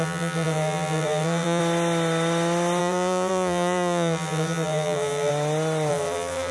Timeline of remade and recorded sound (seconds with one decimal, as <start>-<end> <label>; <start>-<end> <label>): 0.0-1.6 remade; 1.6-2.8 recorded; 2.8-5.3 remade; 5.3-5.9 recorded; 5.9-6.5 remade